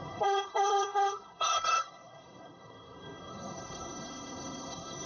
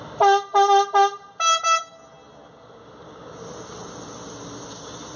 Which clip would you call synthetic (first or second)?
first